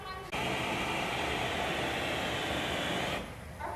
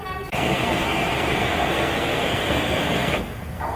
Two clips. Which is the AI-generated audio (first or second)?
second